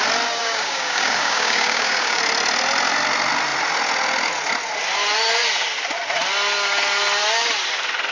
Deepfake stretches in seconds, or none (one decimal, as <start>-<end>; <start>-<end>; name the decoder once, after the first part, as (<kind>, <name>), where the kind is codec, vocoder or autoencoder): 0.4-2.2 (codec, DAC)